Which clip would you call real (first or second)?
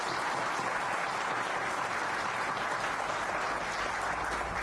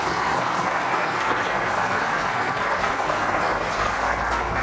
first